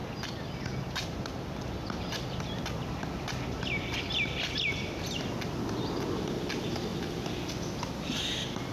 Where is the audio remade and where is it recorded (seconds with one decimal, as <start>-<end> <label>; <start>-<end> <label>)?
0.0-8.7 recorded